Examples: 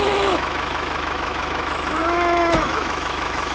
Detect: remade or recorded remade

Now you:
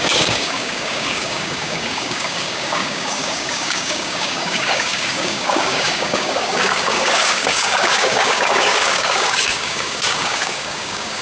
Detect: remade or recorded remade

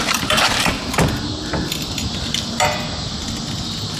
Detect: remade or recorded recorded